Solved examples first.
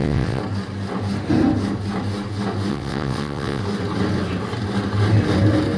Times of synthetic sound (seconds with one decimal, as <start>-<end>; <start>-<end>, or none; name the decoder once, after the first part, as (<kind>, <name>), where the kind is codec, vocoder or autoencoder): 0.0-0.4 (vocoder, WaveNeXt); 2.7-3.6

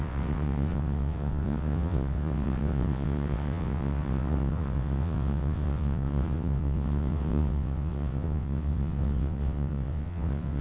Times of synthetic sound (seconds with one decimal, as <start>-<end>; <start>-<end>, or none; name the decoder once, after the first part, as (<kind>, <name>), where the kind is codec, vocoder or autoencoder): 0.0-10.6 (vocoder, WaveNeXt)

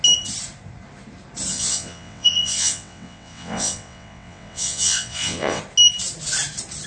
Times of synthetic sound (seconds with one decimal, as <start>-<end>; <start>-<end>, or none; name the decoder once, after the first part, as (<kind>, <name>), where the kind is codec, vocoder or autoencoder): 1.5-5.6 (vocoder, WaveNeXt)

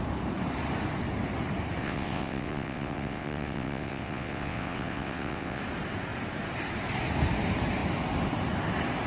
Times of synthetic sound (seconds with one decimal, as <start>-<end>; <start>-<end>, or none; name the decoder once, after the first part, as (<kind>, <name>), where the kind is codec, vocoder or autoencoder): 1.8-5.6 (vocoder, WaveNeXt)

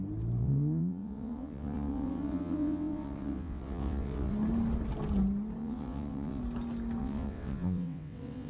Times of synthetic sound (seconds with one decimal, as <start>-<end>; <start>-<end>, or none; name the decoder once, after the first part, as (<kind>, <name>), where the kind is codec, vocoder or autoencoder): 0.4-4.3 (vocoder, WaveNeXt); 5.6-6.4; 7.0-8.5